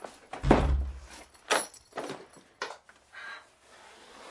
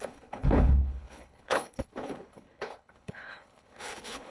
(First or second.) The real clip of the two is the first